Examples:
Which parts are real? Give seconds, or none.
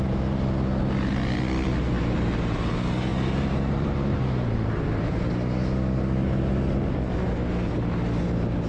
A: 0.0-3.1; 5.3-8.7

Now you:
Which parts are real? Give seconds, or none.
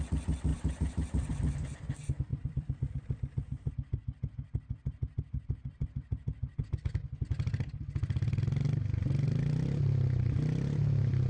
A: 0.0-0.5; 1.3-2.3; 3.7-5.0; 6.6-11.3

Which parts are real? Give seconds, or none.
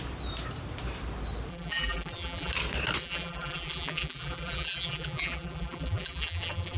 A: 0.0-1.5; 2.5-3.0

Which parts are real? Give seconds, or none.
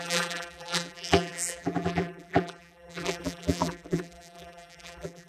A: none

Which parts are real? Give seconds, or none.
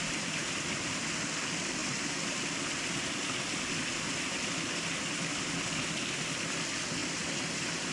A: 0.0-7.9